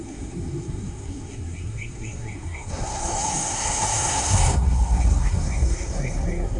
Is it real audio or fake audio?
fake